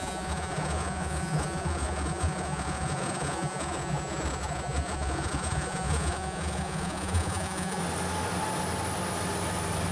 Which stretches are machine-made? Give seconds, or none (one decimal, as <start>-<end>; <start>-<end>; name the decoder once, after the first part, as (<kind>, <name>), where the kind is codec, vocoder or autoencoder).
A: 0.0-7.8 (vocoder, Vocos)